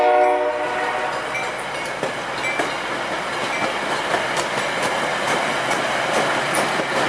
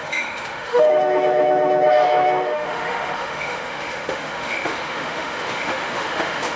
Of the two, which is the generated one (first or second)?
second